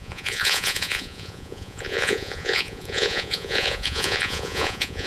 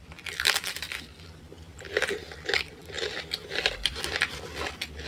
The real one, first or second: second